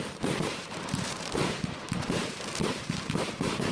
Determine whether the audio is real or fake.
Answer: fake